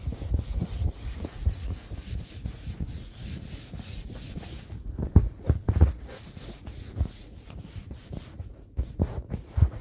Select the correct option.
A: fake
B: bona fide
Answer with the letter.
A